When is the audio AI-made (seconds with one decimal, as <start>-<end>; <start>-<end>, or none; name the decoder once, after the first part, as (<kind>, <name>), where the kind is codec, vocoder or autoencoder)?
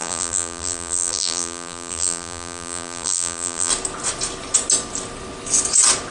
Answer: 0.0-3.7 (vocoder, BigVGAN v2)